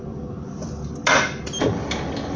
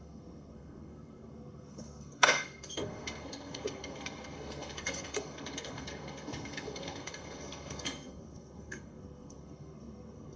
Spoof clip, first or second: second